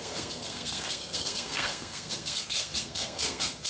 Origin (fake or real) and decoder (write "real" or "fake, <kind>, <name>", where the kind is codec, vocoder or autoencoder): fake, codec, SNAC